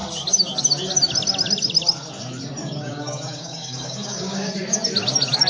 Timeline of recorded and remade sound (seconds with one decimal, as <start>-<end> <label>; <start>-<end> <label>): 0.0-2.6 recorded; 2.6-4.5 remade; 4.5-5.5 recorded